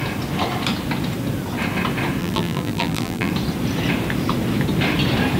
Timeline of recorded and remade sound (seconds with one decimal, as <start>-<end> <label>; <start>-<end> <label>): 0.0-2.2 recorded; 2.2-3.3 remade; 3.3-5.4 recorded